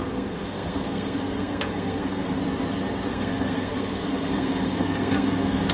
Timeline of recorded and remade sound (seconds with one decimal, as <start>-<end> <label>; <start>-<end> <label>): 0.0-2.4 remade; 2.4-3.1 recorded; 3.1-5.7 remade